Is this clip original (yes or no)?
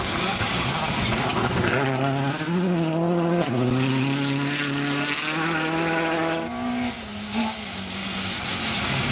yes